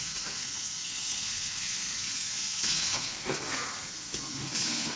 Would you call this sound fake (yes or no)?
yes